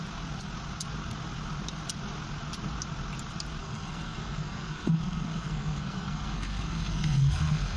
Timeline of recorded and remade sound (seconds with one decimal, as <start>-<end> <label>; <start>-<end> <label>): 0.0-3.6 recorded; 3.6-7.8 remade